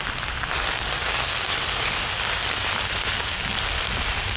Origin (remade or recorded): remade